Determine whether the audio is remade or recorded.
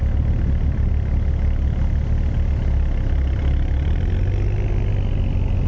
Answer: recorded